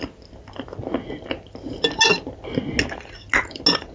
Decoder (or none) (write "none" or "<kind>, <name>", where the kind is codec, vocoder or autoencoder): none